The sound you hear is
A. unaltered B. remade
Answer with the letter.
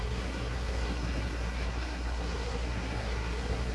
B